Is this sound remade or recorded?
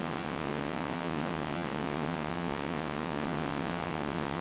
remade